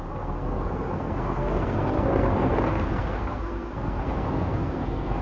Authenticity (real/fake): fake